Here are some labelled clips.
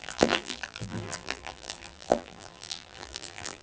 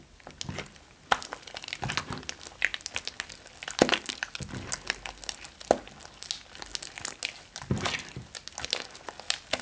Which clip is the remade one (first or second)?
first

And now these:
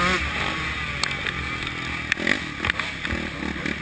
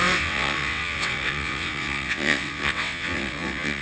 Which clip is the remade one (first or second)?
second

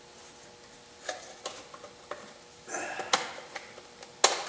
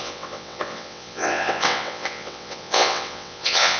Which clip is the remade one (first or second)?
second